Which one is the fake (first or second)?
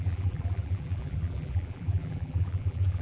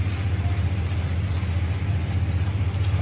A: first